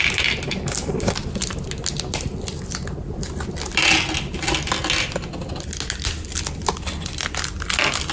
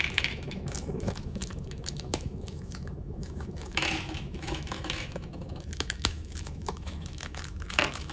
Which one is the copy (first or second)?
second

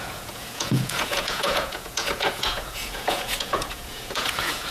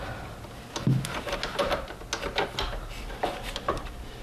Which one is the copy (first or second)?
first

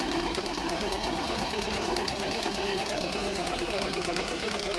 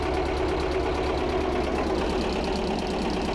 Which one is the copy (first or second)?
first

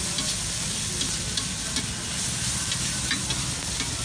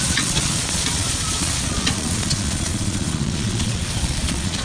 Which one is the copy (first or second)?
second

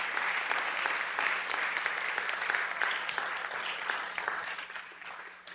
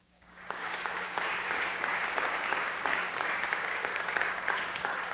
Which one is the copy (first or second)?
second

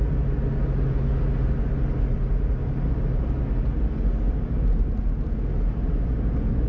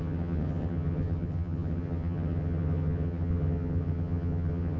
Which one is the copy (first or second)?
second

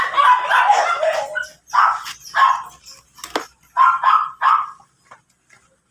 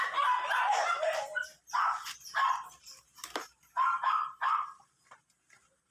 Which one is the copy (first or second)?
second